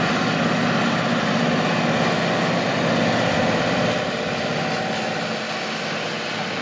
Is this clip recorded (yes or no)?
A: yes